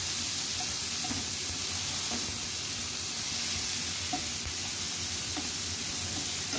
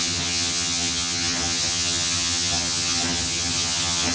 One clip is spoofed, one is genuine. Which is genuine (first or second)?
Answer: first